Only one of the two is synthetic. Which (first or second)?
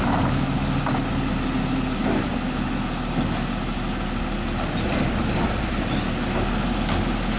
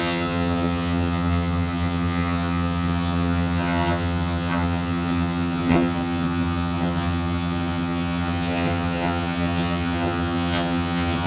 second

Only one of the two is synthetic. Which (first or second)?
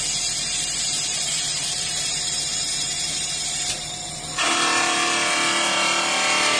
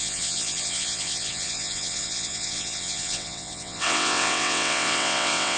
second